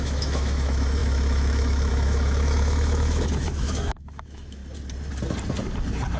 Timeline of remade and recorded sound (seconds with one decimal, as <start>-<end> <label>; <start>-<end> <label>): 0.0-4.6 remade; 4.6-6.2 recorded